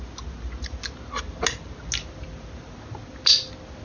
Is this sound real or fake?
real